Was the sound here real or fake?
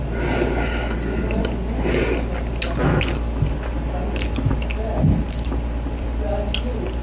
real